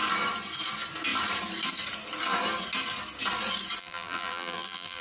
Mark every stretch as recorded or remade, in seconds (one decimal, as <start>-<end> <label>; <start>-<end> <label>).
0.0-3.8 recorded; 3.8-5.0 remade